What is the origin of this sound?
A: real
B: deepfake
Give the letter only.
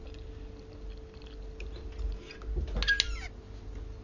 A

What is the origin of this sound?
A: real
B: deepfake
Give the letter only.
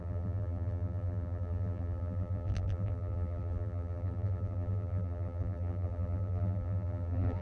B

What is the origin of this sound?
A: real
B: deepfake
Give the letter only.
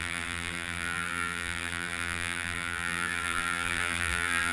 B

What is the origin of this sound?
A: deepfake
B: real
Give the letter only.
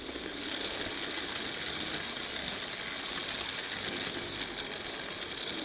B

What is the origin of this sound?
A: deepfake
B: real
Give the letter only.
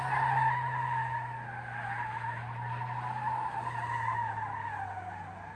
B